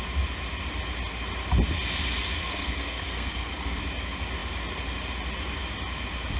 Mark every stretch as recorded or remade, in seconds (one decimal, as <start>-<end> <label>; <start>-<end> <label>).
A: 0.0-2.4 recorded; 2.4-3.8 remade; 3.8-6.4 recorded